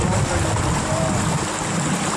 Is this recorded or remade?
recorded